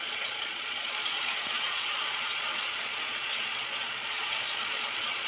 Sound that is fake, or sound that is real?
fake